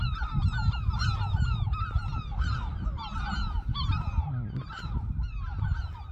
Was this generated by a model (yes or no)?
no